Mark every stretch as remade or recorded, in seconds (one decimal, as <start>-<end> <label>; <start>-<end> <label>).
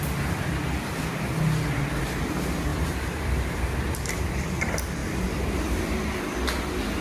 0.0-2.7 recorded; 2.7-4.4 remade; 4.4-5.0 recorded; 5.0-6.2 remade; 6.2-7.0 recorded